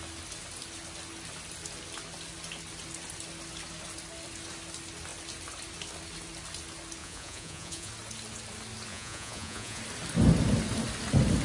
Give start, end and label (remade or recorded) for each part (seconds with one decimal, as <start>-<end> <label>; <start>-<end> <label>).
0.0-7.0 recorded; 7.0-7.9 remade; 7.9-8.9 recorded; 8.9-9.8 remade; 9.8-11.4 recorded